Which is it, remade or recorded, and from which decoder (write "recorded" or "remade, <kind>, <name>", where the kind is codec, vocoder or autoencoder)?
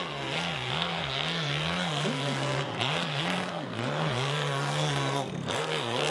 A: remade, codec, SNAC